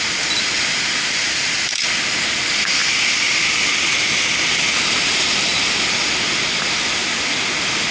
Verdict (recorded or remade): recorded